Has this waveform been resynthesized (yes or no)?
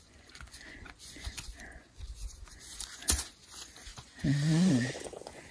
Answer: yes